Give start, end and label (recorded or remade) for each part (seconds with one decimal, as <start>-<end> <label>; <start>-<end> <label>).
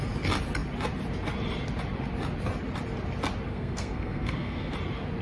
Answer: 0.0-3.5 recorded; 3.5-4.7 remade; 4.7-5.2 recorded